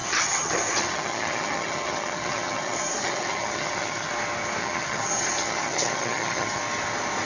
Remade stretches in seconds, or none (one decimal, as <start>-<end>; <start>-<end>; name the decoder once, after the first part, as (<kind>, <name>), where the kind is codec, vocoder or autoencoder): 0.0-4.1 (vocoder, HiFi-GAN); 4.6-6.6